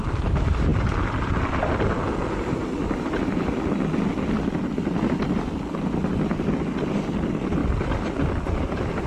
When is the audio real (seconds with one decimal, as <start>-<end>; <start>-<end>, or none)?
0.0-7.6; 8.7-9.1